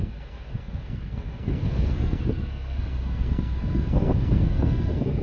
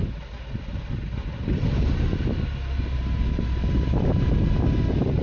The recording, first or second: second